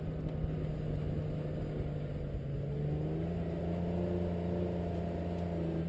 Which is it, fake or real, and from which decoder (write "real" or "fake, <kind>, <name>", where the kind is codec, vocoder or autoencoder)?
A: real